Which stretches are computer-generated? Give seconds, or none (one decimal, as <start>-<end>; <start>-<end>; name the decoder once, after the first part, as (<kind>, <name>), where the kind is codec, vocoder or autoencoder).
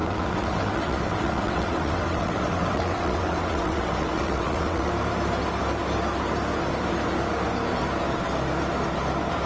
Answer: 0.0-4.9 (vocoder, WaveNeXt)